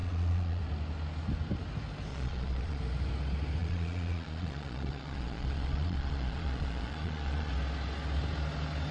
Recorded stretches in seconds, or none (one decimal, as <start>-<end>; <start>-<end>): 0.6-2.1; 2.8-3.6; 7.5-8.9